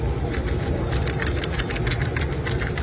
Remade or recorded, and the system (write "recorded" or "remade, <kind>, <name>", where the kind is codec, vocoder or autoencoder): remade, vocoder, BigVGAN v2